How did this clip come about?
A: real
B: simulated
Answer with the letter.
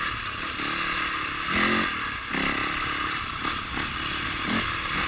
A